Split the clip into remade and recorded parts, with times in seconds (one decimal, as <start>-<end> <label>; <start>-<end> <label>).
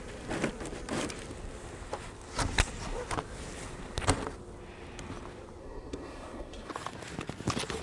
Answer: 0.0-5.6 recorded; 5.6-6.7 remade; 6.7-7.8 recorded